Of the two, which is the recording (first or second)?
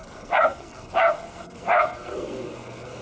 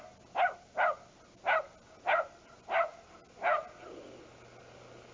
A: second